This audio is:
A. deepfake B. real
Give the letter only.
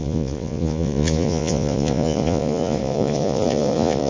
A